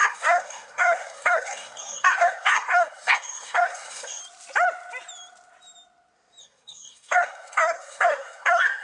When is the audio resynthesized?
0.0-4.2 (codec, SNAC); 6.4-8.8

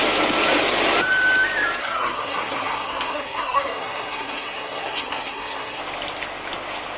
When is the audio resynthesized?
1.8-5.8 (codec, SNAC)

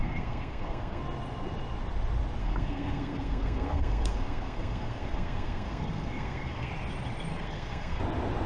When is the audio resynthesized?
0.0-1.0 (codec, SNAC); 2.4-6.7; 7.3-8.0

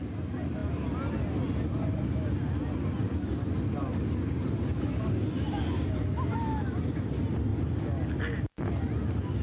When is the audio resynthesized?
none

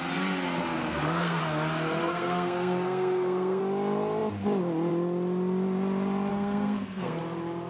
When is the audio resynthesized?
0.8-1.4 (codec, SNAC); 2.0-3.6; 6.3-7.2